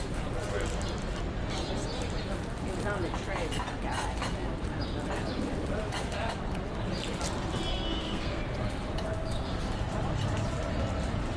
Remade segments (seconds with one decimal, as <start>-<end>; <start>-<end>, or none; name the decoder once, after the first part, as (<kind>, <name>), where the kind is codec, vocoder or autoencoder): 7.7-8.4 (codec, SNAC)